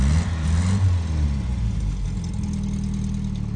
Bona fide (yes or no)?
yes